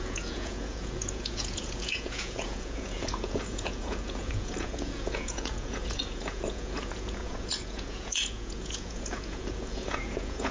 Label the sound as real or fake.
fake